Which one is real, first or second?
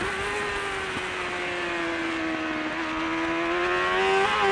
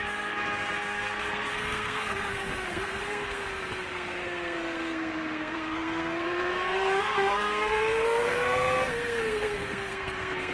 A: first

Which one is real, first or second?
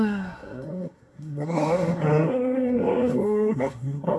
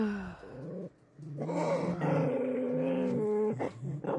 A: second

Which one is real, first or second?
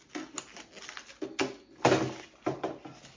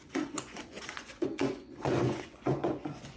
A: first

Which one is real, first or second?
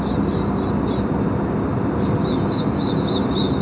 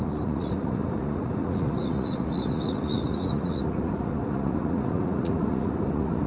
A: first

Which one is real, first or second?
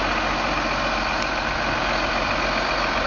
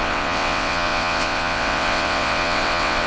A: first